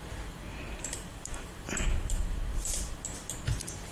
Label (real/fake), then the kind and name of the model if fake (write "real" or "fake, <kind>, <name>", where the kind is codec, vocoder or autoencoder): fake, vocoder, BigVGAN v2